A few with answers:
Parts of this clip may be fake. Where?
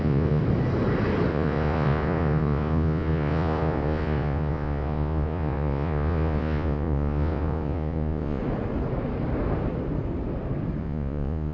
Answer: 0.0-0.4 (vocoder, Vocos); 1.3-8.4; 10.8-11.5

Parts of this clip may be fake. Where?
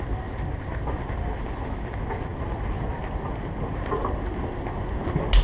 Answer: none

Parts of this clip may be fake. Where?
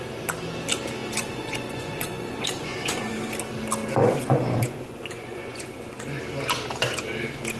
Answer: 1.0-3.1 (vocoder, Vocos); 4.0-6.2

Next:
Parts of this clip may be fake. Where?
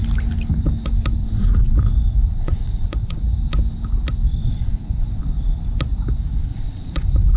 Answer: 1.2-3.4 (vocoder, Vocos); 4.4-5.2; 6.5-7.4